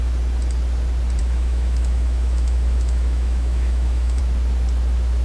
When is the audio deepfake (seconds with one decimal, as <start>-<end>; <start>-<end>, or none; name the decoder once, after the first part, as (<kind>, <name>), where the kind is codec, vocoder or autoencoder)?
1.2-4.2 (autoencoder, DAC-VAE)